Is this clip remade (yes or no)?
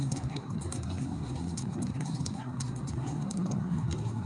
yes